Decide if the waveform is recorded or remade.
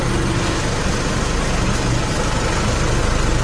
recorded